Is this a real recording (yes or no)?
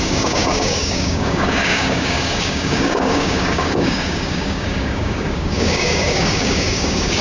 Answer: no